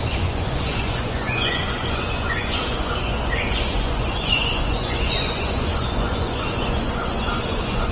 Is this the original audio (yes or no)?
no